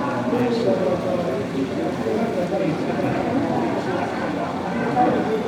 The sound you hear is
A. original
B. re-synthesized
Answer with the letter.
A